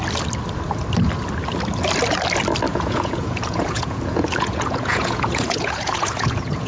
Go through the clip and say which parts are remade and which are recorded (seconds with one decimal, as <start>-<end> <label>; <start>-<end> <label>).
0.0-2.7 recorded; 2.7-6.7 remade

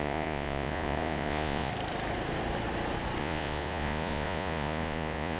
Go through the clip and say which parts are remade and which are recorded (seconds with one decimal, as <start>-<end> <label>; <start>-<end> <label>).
0.0-1.7 remade; 1.7-3.2 recorded; 3.2-5.4 remade

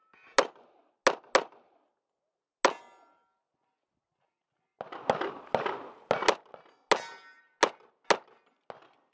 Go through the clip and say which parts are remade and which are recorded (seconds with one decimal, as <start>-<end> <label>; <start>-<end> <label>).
0.0-9.1 recorded

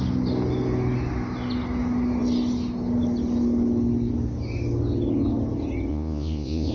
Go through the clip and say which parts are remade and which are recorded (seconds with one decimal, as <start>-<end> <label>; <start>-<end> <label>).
0.0-5.9 recorded; 5.9-6.7 remade

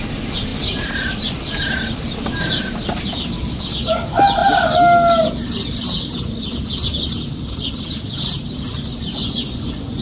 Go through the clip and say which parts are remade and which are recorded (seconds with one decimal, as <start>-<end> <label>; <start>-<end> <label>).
0.0-9.2 recorded; 9.2-10.0 remade

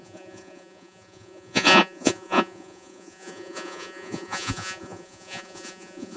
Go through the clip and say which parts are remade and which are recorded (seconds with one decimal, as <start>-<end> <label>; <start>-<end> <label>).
0.0-6.2 remade